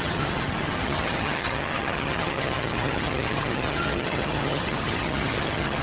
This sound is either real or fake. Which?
fake